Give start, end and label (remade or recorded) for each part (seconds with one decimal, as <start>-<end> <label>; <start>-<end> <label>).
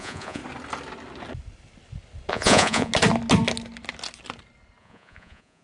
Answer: 0.0-0.4 remade; 0.4-2.3 recorded; 2.3-2.9 remade; 2.9-4.8 recorded; 4.8-5.6 remade